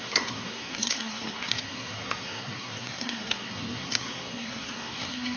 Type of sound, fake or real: fake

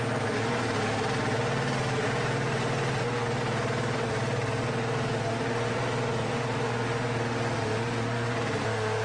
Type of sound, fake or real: real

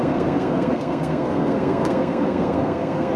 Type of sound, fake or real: fake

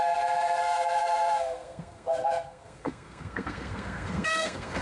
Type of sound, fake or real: fake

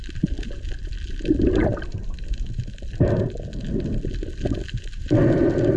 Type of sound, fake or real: real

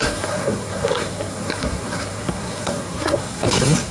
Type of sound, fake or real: fake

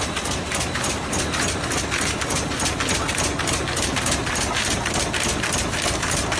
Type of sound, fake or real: real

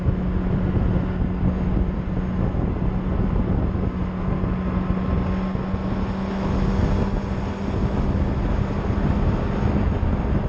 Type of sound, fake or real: real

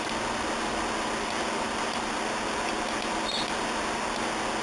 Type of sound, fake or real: real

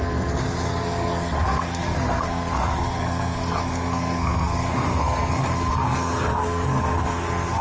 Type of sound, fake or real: fake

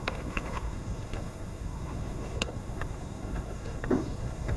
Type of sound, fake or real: fake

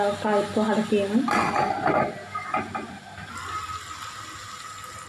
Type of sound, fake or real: real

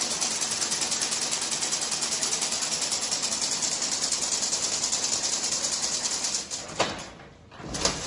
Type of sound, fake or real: real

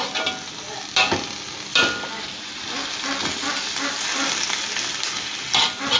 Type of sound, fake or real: real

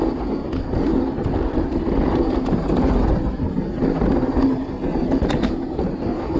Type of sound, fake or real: real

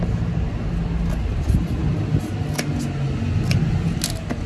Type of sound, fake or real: real